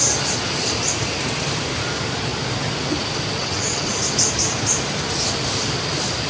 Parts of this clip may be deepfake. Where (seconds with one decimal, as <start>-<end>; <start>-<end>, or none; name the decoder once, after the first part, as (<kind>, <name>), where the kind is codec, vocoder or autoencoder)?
3.4-3.9 (vocoder, WaveNeXt)